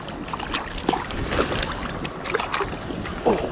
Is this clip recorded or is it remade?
recorded